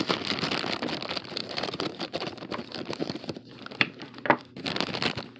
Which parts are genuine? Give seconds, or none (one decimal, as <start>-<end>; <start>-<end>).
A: 0.0-1.4; 2.3-3.0; 4.6-5.4